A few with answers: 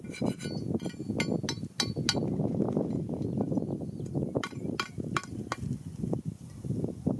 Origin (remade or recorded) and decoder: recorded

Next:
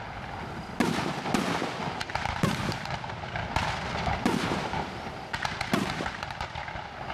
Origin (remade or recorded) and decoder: recorded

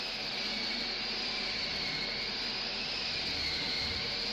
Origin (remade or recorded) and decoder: recorded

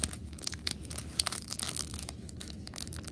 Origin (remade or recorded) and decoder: remade, autoencoder, DAC-VAE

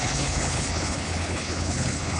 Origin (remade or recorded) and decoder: remade, codec, HILCodec